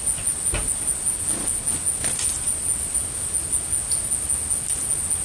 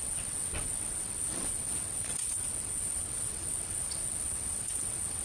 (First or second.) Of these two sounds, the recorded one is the first